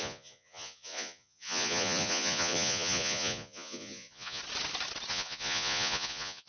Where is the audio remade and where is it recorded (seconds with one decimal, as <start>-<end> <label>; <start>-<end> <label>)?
0.0-4.4 remade; 4.4-5.1 recorded; 5.1-6.5 remade